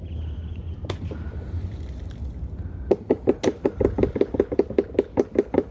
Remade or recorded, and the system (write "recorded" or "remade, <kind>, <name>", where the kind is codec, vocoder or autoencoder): recorded